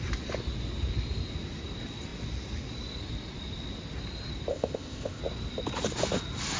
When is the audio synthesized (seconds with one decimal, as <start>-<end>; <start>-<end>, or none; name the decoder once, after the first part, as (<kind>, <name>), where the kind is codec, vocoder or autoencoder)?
4.5-5.2 (codec, ZipCodec)